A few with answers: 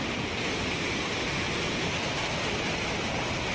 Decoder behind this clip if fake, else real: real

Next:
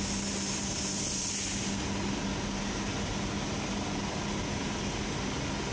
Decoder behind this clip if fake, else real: real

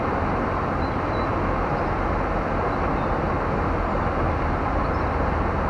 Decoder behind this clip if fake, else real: real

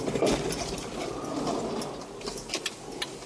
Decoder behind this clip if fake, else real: real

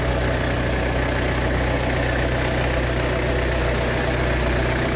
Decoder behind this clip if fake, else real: real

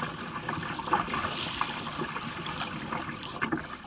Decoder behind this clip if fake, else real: real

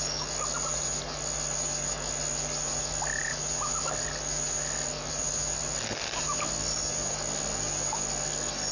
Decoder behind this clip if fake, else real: real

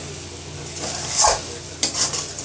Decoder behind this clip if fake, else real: real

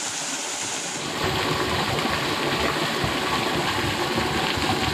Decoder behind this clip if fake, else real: real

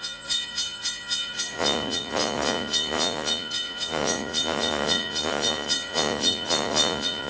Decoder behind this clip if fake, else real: fake, vocoder, Vocos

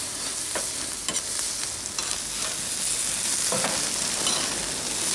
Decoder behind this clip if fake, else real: real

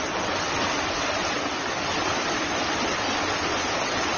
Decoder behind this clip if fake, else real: real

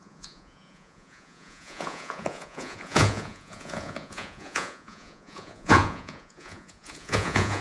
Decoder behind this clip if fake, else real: fake, vocoder, Vocos